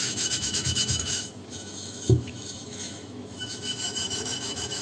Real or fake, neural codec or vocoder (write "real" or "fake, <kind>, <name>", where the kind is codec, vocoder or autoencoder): fake, autoencoder, DAC-VAE